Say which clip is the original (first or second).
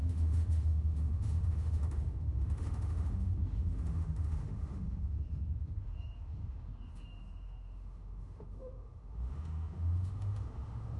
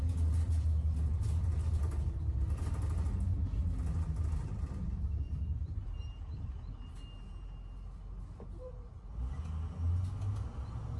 second